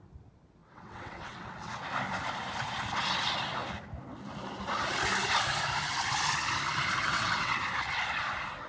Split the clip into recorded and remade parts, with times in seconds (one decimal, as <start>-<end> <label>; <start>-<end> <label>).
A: 0.0-0.6 recorded; 0.6-1.7 remade; 1.7-7.0 recorded; 7.0-7.6 remade; 7.6-8.7 recorded